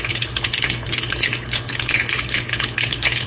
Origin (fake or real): fake